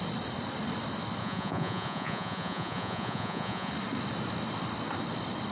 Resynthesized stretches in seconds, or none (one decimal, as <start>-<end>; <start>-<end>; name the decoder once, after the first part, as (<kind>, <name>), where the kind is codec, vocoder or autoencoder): 1.2-3.7 (vocoder, Vocos)